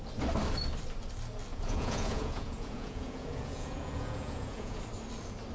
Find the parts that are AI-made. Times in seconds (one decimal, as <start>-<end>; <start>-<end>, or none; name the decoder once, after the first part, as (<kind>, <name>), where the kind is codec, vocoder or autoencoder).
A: 1.5-4.8 (vocoder, Vocos)